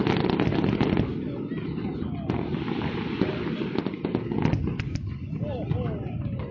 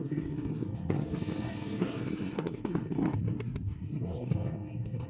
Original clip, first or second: first